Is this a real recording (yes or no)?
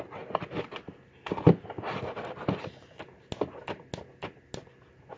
yes